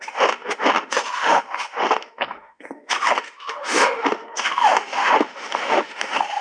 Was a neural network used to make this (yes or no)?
yes